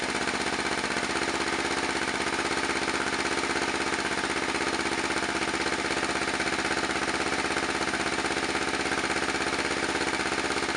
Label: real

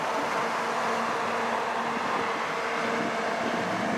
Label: real